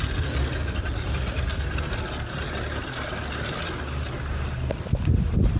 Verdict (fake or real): real